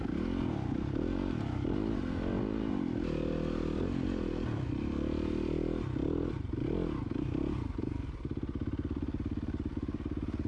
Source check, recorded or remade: recorded